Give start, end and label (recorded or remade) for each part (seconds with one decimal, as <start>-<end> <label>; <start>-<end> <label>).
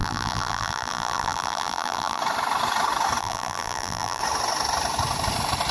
0.0-2.2 remade; 2.2-3.2 recorded; 3.2-4.2 remade; 4.2-5.7 recorded